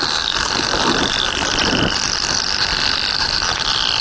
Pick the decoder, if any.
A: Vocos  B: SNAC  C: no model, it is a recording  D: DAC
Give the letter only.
C